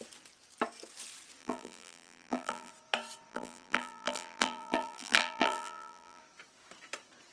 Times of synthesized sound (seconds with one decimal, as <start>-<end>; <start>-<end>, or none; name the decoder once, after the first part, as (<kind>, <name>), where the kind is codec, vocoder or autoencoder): 1.4-2.7 (vocoder, BigVGAN v2); 3.3-6.2